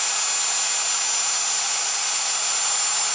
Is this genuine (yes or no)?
yes